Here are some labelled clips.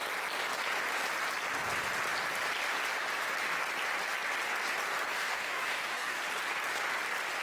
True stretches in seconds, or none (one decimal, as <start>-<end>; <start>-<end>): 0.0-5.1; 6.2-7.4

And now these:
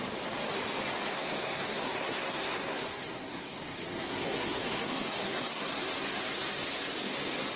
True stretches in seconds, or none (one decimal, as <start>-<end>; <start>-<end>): 0.0-1.1; 5.7-7.6

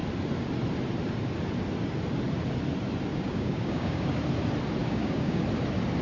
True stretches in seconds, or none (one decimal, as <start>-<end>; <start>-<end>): 0.0-3.1; 4.2-4.8; 5.4-6.0